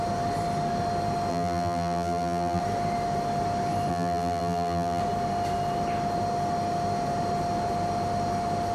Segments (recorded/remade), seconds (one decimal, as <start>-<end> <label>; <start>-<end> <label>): 0.0-1.3 recorded; 1.3-2.6 remade; 2.6-3.9 recorded; 3.9-5.0 remade; 5.0-8.7 recorded